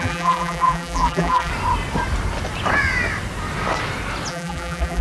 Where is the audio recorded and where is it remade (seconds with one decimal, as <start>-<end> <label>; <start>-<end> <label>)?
0.0-1.5 remade; 1.5-4.3 recorded; 4.3-5.0 remade